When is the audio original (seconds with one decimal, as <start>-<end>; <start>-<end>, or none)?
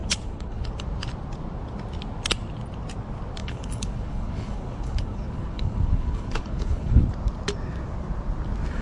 0.7-3.4; 7.1-8.8